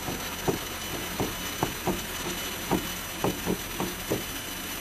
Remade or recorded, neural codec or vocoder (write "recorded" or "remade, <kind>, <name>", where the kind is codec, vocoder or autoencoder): recorded